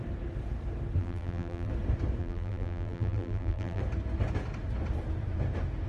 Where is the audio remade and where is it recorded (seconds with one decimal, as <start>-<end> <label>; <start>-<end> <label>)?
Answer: 0.0-1.0 recorded; 1.0-1.7 remade; 1.7-2.2 recorded; 2.2-3.8 remade; 3.8-5.9 recorded